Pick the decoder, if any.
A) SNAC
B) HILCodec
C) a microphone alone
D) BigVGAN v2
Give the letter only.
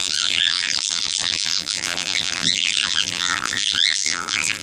D